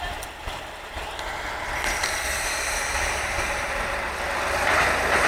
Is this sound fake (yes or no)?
no